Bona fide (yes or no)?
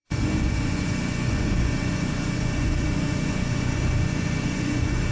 no